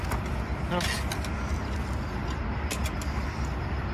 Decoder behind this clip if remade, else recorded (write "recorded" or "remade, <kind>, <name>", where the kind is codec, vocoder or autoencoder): recorded